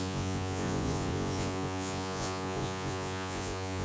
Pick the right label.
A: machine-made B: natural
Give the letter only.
A